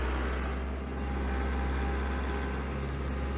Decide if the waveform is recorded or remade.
recorded